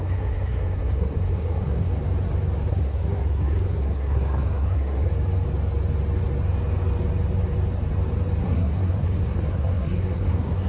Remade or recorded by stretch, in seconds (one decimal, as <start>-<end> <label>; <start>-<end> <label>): 0.0-1.9 remade; 1.9-2.7 recorded; 2.7-5.1 remade; 5.1-8.4 recorded; 8.4-10.7 remade

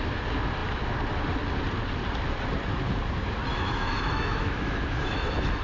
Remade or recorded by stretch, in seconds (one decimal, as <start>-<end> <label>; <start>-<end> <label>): 0.0-3.5 recorded; 3.5-5.6 remade

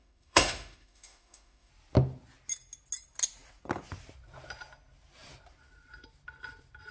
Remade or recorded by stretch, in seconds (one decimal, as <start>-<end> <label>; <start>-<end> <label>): 0.0-1.7 remade; 1.7-6.9 recorded